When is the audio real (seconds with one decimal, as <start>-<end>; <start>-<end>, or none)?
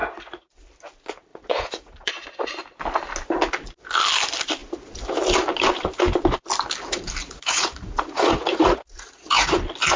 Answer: 0.5-1.3; 2.1-7.2; 9.6-10.0